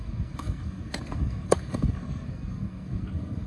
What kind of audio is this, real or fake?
fake